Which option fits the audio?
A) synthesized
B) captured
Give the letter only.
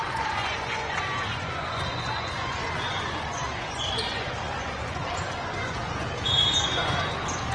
A